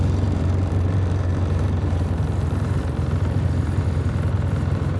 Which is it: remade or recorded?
remade